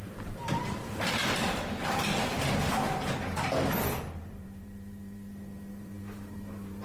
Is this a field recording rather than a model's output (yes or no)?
no